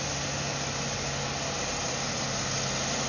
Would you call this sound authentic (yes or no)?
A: yes